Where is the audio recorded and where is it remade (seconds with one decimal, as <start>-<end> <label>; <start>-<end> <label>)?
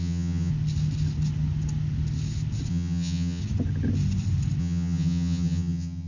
0.0-0.5 remade; 0.5-2.7 recorded; 2.7-3.4 remade; 3.4-4.6 recorded; 4.6-6.1 remade